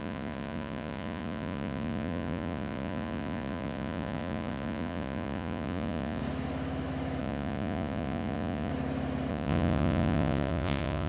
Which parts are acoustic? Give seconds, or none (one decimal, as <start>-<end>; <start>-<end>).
6.2-7.2; 8.7-9.3